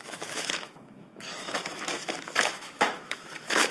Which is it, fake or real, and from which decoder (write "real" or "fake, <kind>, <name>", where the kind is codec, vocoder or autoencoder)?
fake, autoencoder, DAC-VAE